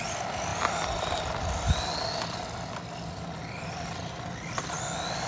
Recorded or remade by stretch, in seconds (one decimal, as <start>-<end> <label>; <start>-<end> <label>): 0.0-5.3 recorded